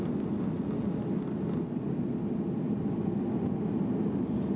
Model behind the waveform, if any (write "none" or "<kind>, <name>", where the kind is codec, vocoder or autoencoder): none